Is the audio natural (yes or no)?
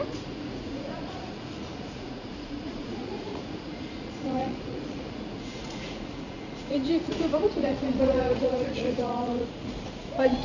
no